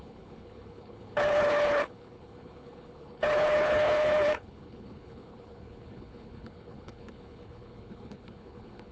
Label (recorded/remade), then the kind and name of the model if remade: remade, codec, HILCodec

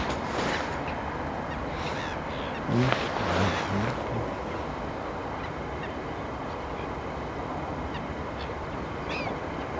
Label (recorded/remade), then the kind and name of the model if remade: recorded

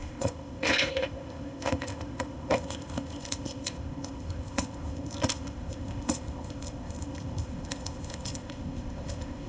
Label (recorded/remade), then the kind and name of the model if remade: remade, codec, ZipCodec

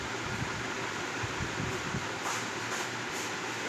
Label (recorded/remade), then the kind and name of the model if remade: recorded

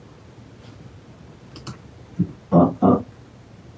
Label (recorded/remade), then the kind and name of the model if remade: recorded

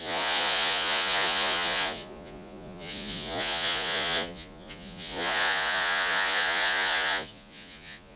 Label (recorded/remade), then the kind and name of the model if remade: remade, vocoder, Vocos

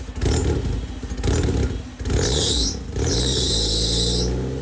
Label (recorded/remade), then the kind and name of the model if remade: recorded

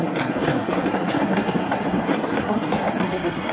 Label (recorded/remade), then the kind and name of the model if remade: remade, codec, SNAC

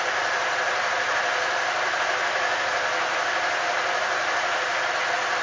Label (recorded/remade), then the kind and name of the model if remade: recorded